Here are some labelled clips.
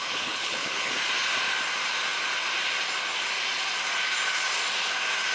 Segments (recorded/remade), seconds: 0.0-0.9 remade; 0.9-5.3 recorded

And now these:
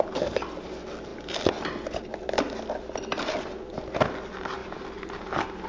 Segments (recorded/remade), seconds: 0.0-5.7 recorded

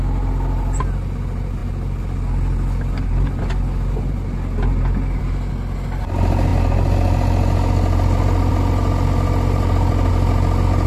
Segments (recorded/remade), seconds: 0.0-10.9 recorded

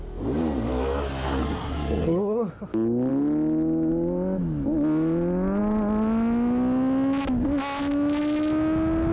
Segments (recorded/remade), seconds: 0.0-1.4 recorded; 1.4-2.5 remade; 2.5-9.1 recorded

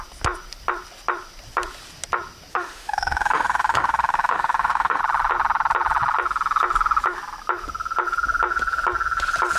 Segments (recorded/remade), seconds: 0.0-2.5 recorded; 2.5-5.0 remade; 5.0-9.6 recorded

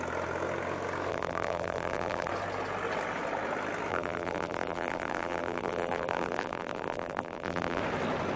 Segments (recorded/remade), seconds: 0.0-1.1 recorded; 1.1-2.3 remade; 2.3-3.9 recorded; 3.9-7.8 remade; 7.8-8.4 recorded